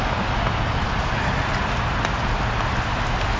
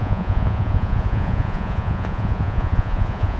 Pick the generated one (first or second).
second